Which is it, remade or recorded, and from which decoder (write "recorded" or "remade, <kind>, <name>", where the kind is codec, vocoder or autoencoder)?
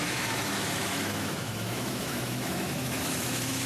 remade, autoencoder, DAC-VAE